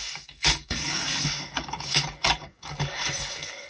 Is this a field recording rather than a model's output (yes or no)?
no